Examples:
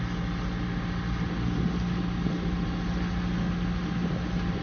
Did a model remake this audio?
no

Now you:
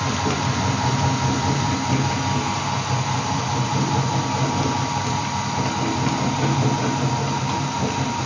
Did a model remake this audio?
yes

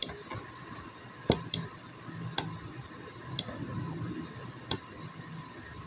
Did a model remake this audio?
yes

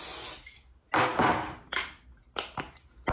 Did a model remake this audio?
no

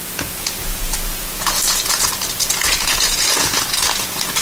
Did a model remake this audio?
yes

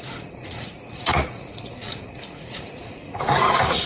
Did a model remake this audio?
yes